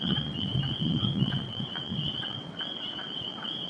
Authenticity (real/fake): fake